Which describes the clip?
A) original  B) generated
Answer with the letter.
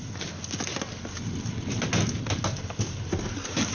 A